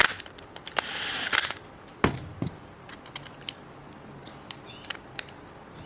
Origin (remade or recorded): recorded